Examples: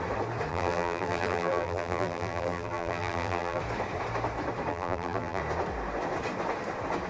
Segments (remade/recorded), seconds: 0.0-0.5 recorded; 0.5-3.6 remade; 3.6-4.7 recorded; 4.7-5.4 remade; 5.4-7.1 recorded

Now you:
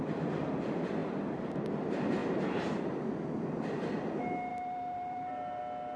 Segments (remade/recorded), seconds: 0.0-2.2 recorded; 2.2-3.0 remade; 3.0-4.5 recorded; 4.5-5.6 remade; 5.6-6.0 recorded